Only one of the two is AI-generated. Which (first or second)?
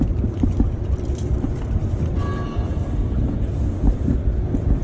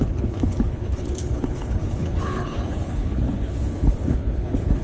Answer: second